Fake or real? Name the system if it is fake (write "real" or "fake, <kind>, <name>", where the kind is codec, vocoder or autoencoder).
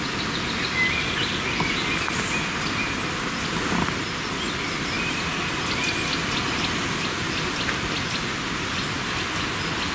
real